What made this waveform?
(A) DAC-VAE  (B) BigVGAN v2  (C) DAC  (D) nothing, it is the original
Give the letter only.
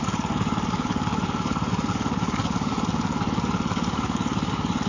C